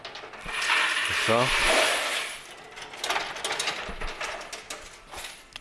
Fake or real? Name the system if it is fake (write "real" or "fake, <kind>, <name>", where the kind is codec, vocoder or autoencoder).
real